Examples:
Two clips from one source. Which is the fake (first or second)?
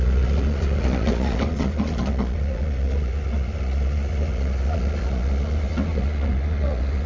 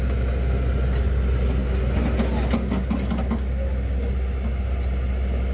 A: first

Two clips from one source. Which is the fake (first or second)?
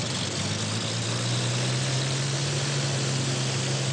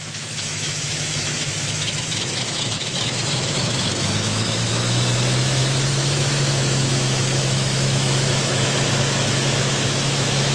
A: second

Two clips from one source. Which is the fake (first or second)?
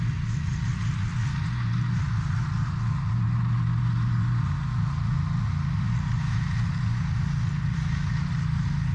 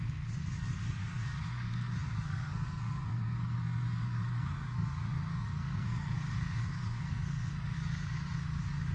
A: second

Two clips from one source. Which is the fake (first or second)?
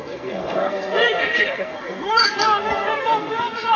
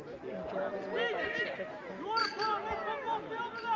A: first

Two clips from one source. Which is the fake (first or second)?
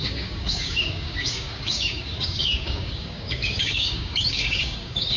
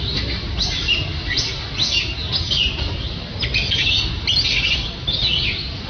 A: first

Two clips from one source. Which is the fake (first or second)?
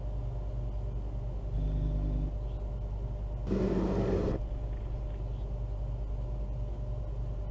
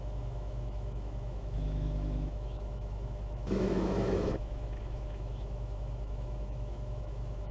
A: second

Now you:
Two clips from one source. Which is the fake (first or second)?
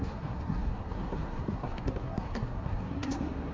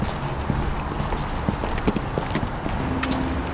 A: first